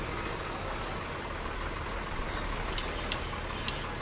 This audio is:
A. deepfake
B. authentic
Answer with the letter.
B